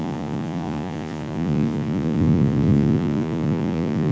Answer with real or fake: fake